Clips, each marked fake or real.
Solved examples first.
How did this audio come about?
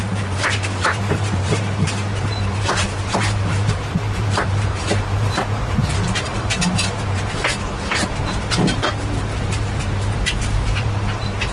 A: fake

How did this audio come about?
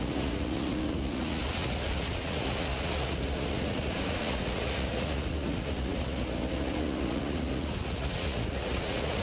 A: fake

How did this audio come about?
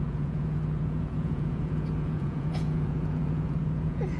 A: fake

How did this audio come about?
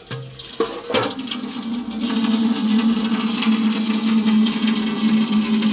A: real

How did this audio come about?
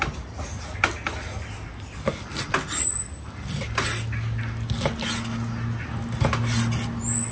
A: real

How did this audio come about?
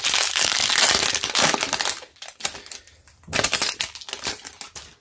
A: real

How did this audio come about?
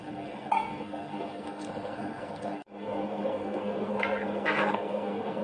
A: fake